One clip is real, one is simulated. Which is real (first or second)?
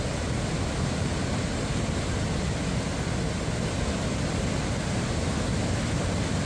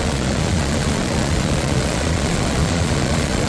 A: first